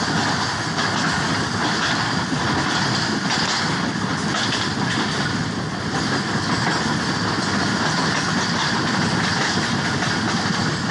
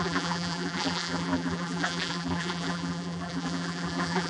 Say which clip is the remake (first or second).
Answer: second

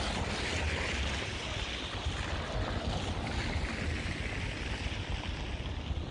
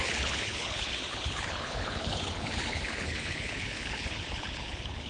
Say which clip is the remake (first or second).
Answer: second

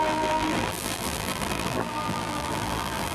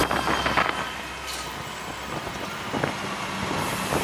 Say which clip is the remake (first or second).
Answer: first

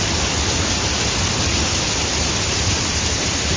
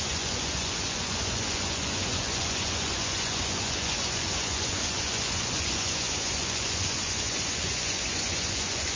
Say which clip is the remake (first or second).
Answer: second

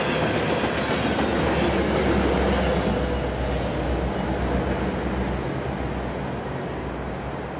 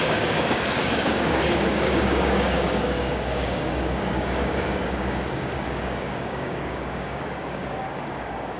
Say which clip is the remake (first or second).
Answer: second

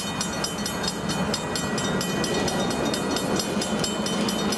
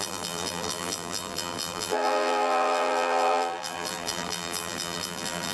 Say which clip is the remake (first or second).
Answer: second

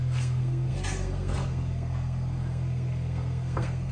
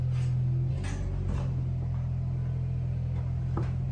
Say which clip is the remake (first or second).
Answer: first